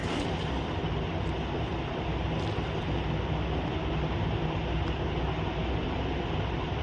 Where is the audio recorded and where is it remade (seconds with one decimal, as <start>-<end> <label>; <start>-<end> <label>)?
0.0-0.8 remade; 0.8-6.8 recorded